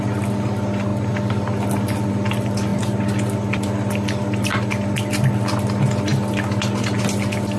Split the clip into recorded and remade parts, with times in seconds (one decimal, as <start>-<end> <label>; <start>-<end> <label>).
0.0-7.6 recorded